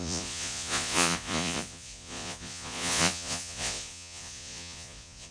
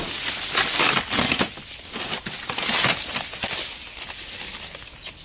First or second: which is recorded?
second